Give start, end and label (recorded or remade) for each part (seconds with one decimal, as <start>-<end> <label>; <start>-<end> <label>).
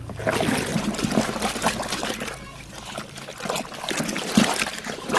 0.0-5.2 recorded